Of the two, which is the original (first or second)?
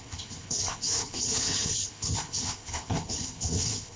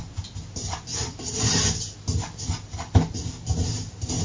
second